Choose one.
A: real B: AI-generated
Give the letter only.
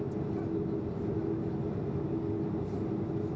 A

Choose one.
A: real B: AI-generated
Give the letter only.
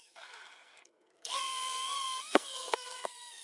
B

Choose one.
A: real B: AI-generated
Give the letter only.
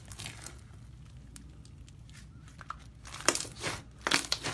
A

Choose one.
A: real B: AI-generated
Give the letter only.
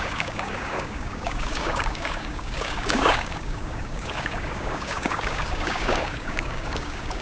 B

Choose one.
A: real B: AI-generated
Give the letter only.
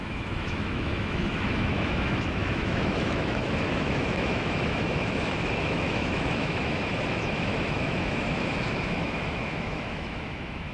B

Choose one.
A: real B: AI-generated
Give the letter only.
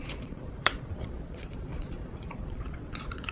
B